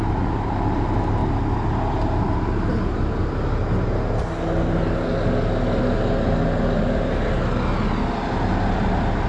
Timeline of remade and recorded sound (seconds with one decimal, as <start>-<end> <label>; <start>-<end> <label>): 0.0-9.3 recorded